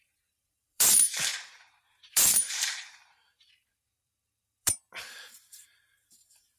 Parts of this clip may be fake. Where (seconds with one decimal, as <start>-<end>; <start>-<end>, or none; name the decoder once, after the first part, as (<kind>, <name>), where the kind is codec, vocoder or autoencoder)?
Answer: 0.0-6.6 (vocoder, BigVGAN v2)

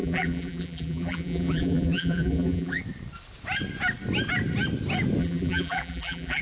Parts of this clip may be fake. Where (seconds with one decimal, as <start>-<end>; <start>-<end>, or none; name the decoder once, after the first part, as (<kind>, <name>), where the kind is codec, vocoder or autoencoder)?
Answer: 0.0-2.8 (vocoder, BigVGAN v2); 5.2-6.4

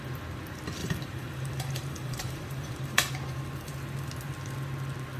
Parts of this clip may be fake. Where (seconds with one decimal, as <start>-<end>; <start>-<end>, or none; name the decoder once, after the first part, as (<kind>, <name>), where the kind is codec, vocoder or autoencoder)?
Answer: 0.8-3.1 (vocoder, BigVGAN v2)

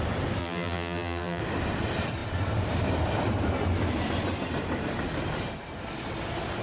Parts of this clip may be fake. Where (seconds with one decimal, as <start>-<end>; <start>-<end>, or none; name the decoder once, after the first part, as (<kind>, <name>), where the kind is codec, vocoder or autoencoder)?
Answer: 0.4-1.4 (vocoder, BigVGAN v2)

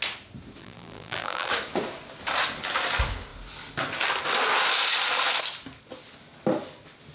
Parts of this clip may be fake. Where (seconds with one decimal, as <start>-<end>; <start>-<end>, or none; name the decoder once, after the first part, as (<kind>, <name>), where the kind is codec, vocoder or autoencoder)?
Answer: 0.6-1.5 (vocoder, BigVGAN v2)